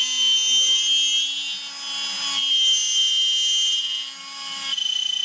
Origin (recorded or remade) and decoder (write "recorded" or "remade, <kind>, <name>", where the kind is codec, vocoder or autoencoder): recorded